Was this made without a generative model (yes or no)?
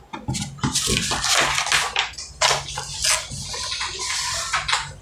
yes